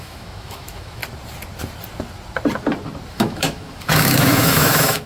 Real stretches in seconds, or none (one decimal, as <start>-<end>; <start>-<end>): 1.0-3.1